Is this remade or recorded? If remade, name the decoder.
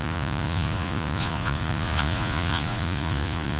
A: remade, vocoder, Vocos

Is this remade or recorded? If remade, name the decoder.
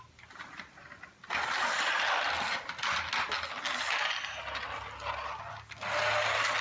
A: recorded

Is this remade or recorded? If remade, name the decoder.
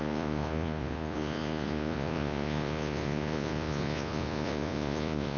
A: remade, vocoder, Vocos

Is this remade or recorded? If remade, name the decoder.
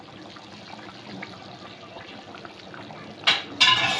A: recorded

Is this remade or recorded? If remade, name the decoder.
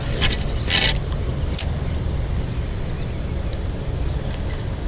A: recorded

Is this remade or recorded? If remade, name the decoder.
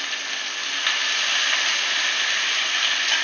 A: recorded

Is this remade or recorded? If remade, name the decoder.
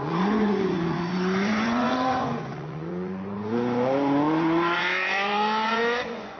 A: remade, vocoder, Vocos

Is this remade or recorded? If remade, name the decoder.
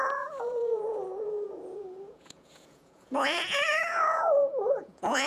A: remade, vocoder, Vocos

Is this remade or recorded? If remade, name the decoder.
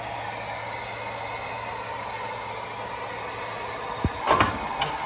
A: recorded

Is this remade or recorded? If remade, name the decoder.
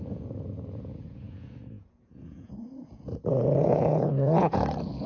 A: remade, vocoder, Vocos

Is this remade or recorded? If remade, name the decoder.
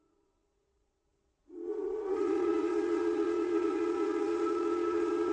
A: remade, vocoder, Vocos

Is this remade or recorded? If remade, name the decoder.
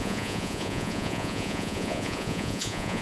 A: remade, vocoder, Vocos